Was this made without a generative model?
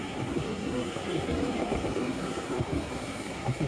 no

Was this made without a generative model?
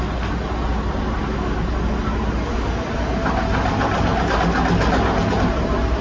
yes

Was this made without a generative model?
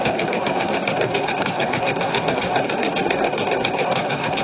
no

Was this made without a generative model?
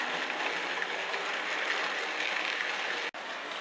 yes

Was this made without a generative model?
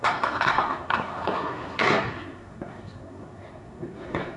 no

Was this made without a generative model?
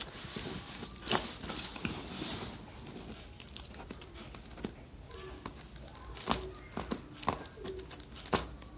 yes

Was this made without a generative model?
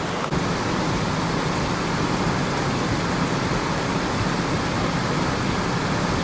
yes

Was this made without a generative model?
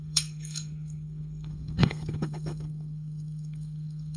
no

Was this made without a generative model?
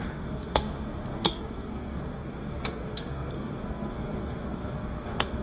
no